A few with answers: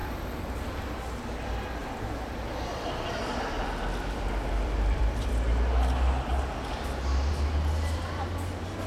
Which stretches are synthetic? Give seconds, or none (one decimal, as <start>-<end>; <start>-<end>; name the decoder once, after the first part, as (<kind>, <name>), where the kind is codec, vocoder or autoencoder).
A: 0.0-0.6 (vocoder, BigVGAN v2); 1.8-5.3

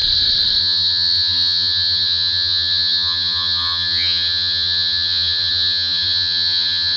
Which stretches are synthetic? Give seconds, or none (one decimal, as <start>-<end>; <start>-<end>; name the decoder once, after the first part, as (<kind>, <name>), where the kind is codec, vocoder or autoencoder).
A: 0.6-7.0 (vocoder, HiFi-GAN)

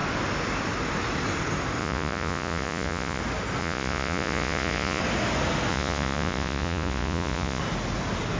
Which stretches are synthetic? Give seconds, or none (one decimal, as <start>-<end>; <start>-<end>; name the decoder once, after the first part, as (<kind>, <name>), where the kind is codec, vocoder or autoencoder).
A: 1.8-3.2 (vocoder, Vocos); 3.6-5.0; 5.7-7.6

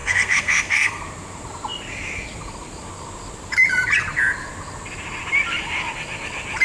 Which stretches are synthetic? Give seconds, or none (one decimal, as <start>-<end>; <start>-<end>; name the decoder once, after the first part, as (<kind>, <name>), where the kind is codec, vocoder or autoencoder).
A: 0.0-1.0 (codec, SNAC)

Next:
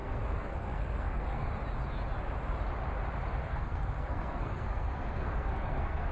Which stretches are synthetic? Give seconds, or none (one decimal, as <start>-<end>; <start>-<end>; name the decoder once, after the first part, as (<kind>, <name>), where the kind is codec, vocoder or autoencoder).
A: 0.0-1.5 (codec, SNAC); 3.4-6.1

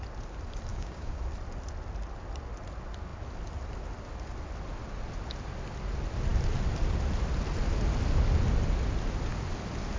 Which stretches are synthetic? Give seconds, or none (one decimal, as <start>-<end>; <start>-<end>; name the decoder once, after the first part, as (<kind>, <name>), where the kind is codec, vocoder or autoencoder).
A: 0.7-1.2 (codec, DAC)

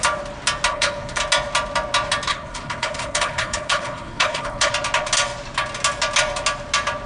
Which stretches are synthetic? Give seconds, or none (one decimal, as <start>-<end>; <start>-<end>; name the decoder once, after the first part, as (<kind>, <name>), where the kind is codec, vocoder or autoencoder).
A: 0.7-1.2 (codec, HILCodec); 2.3-4.7

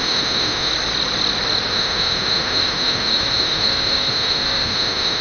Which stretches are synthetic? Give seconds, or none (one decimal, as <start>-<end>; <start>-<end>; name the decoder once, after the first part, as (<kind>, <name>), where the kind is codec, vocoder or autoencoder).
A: 0.0-0.7 (autoencoder, DAC-VAE); 1.7-5.2